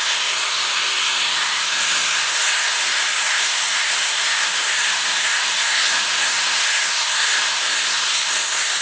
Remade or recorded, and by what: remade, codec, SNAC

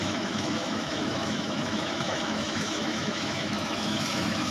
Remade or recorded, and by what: remade, autoencoder, DAC-VAE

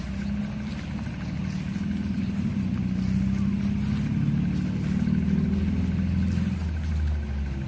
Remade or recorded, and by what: recorded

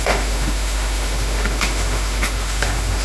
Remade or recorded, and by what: remade, autoencoder, DAC-VAE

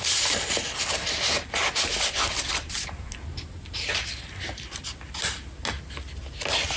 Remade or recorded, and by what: recorded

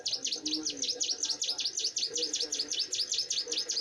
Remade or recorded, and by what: recorded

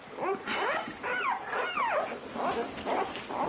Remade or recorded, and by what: recorded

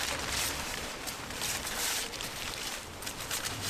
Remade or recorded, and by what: remade, vocoder, BigVGAN v2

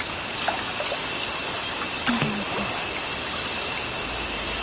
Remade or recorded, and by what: recorded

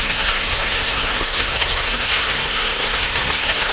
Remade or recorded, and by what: remade, codec, SNAC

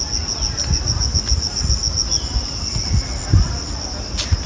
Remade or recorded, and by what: recorded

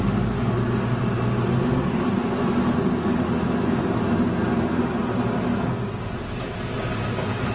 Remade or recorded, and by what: recorded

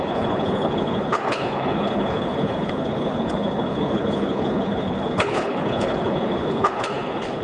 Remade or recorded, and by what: remade, codec, HILCodec